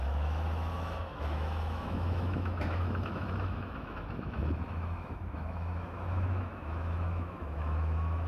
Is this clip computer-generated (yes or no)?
yes